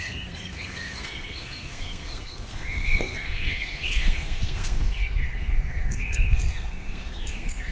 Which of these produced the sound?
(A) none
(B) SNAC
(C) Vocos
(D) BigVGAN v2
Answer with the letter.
B